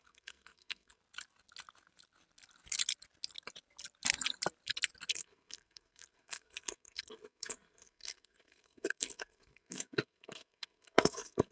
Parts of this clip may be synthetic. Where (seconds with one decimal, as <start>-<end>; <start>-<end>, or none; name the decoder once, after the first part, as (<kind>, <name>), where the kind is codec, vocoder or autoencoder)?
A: 0.0-1.0 (codec, SNAC); 5.1-11.5